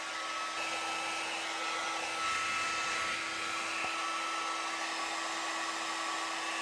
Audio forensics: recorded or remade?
recorded